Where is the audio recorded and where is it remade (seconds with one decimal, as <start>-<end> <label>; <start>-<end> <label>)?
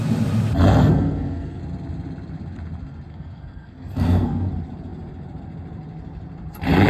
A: 0.0-0.8 recorded; 0.8-1.6 remade; 1.6-3.1 recorded; 3.1-4.5 remade; 4.5-6.9 recorded